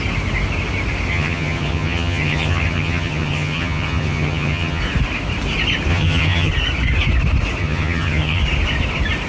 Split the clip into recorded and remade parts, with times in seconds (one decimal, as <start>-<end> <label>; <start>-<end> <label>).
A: 0.0-1.1 recorded; 1.1-4.8 remade; 4.8-5.9 recorded; 5.9-6.5 remade; 6.5-7.6 recorded; 7.6-8.4 remade; 8.4-9.3 recorded